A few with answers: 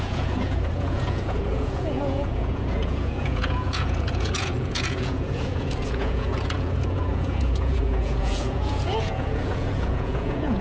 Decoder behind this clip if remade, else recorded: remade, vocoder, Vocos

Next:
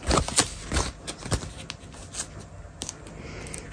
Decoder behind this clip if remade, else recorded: recorded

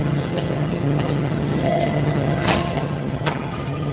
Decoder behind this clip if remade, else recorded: remade, vocoder, HiFi-GAN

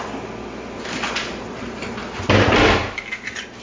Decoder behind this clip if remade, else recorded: recorded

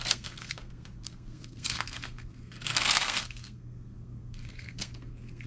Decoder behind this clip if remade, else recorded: remade, codec, SNAC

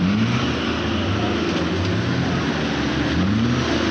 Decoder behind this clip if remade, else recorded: recorded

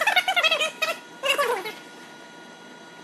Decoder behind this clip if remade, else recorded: recorded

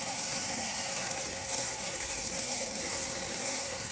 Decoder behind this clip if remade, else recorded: remade, codec, SNAC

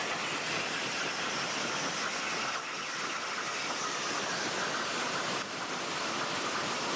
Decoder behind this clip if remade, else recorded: recorded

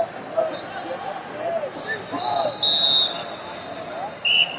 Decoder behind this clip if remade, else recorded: recorded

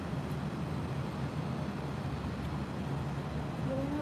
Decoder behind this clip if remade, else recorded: recorded